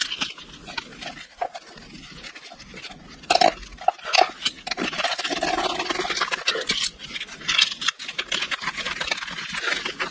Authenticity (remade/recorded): recorded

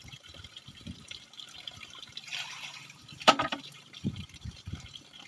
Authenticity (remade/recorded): remade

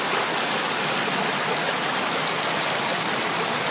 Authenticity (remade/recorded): recorded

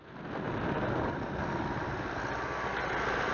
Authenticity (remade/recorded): recorded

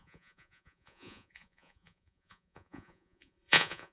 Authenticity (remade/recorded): remade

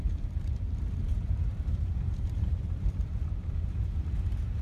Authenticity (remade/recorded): remade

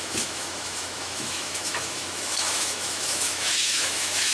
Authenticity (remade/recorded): remade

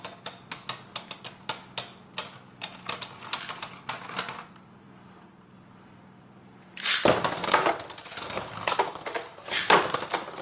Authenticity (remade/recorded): recorded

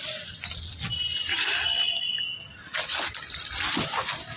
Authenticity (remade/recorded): recorded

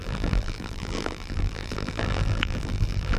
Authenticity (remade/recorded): remade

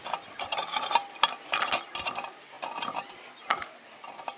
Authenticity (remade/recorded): recorded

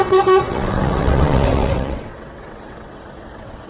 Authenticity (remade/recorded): remade